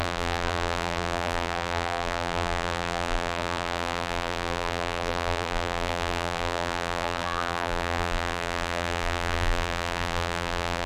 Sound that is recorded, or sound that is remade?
remade